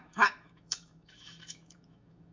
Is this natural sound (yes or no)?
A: no